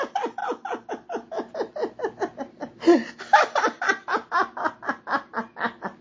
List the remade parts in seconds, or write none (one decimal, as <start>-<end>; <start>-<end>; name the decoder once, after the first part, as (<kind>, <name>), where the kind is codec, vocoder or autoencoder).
none

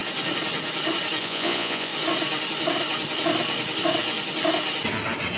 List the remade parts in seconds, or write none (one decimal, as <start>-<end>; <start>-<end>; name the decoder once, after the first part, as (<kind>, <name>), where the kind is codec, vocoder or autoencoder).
1.2-1.9 (vocoder, Vocos)

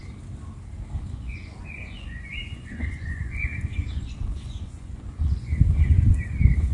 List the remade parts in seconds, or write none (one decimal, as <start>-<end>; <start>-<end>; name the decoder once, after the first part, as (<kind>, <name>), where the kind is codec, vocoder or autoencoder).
1.0-6.7 (vocoder, Vocos)

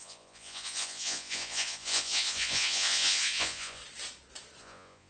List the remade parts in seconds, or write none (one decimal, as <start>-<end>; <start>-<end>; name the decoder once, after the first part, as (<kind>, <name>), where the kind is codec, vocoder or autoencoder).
0.0-3.8 (vocoder, Vocos); 4.6-5.1

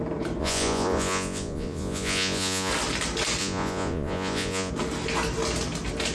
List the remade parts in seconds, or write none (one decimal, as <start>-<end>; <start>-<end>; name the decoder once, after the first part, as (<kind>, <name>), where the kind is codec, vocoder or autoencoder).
0.4-2.7 (vocoder, Vocos); 3.4-4.7

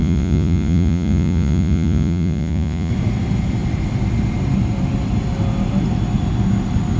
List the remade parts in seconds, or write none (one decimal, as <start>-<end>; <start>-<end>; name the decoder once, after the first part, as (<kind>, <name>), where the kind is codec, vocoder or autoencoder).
0.0-2.9 (vocoder, Vocos)